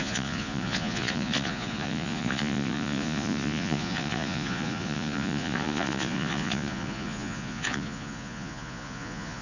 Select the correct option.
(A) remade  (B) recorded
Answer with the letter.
A